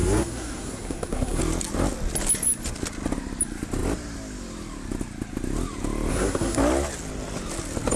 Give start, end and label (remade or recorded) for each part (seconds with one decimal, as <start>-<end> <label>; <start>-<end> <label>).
0.0-1.4 remade; 1.4-6.1 recorded; 6.1-6.6 remade; 6.6-8.0 recorded